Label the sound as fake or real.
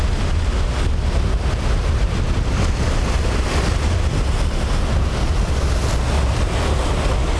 real